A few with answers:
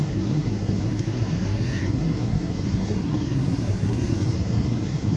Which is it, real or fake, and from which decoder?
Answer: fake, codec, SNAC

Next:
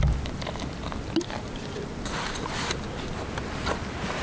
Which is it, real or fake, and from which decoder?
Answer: real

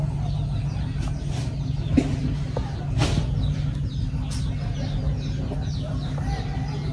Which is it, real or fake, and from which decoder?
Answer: real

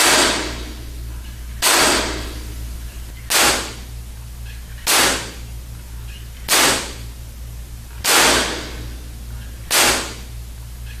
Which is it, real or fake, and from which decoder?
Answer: real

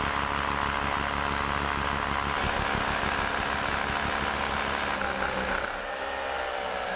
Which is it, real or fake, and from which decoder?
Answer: real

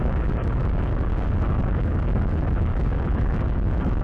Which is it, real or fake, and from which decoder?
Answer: fake, codec, DAC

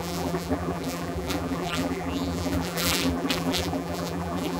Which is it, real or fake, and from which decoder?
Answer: fake, vocoder, BigVGAN v2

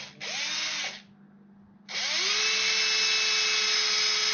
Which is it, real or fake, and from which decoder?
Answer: real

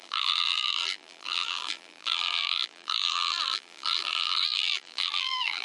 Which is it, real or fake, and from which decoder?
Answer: fake, vocoder, BigVGAN v2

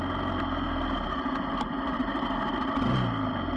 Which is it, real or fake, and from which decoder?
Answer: real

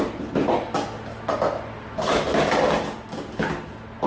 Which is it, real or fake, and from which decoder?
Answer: real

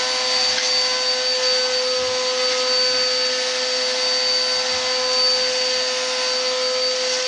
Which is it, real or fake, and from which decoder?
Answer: real